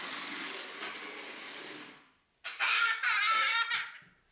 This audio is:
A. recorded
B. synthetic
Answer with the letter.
A